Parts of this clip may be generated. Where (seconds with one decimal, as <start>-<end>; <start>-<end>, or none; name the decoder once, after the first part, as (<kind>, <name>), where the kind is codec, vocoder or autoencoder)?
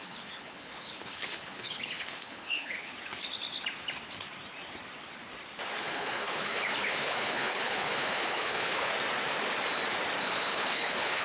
0.0-2.9 (codec, HILCodec); 5.8-8.9; 10.2-11.2